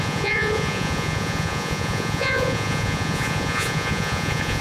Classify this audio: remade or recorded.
remade